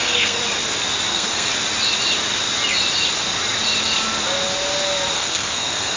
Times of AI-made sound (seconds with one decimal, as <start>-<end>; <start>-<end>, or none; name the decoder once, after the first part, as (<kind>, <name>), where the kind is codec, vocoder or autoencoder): 0.0-0.4 (codec, SNAC); 1.1-1.5; 5.1-6.0